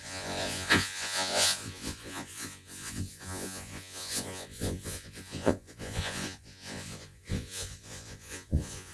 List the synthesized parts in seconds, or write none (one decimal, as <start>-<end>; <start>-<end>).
0.0-8.9